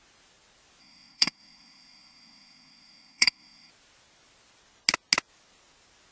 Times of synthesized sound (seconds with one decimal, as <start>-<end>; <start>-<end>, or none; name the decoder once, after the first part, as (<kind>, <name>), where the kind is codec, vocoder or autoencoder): 0.8-3.7 (codec, SNAC)